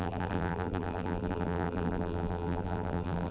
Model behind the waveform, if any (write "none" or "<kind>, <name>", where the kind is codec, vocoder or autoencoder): vocoder, BigVGAN v2